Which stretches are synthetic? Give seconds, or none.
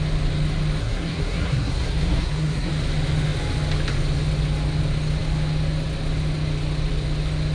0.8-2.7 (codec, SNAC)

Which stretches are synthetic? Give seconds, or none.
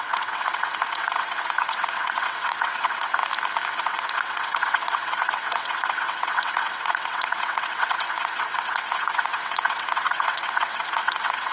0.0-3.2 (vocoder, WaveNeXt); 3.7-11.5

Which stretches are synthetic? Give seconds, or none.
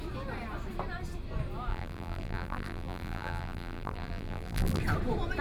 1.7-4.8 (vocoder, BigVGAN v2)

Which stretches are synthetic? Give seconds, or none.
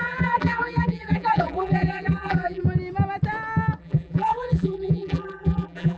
0.0-2.6 (vocoder, BigVGAN v2); 3.8-6.0